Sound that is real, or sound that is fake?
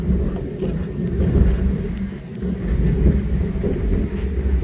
real